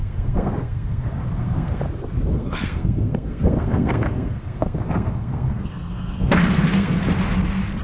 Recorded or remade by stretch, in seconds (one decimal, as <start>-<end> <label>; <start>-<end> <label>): 0.0-1.8 remade; 1.8-2.3 recorded; 2.3-7.0 remade; 7.0-7.8 recorded